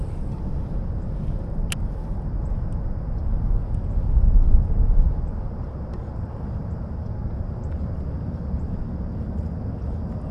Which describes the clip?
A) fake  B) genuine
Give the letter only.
B